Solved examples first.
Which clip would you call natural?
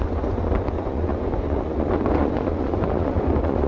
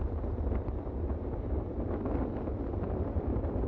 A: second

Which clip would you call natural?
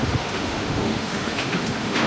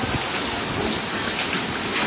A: second